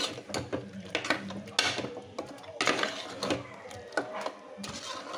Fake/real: real